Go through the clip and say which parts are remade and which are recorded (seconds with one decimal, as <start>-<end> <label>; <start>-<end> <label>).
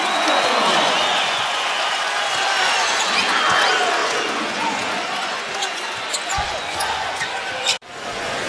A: 0.0-8.5 remade